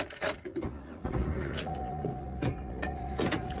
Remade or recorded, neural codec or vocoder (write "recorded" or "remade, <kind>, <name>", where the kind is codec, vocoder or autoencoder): remade, vocoder, Vocos